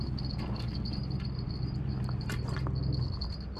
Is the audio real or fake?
real